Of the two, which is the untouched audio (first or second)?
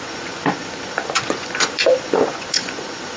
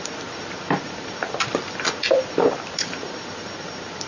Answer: second